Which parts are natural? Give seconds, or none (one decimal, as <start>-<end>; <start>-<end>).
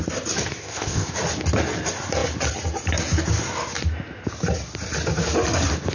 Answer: 0.0-0.6; 1.1-5.9